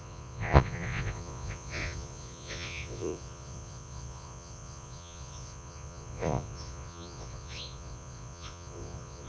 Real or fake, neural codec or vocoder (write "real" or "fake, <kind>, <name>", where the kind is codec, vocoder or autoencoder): fake, vocoder, Vocos